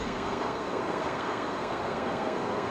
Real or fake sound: fake